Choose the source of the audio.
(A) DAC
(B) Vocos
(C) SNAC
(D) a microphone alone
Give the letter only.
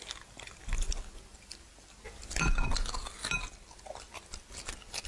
D